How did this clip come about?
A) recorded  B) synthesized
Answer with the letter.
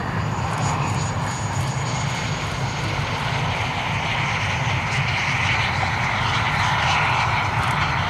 A